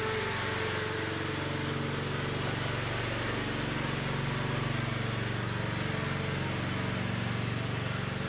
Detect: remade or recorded recorded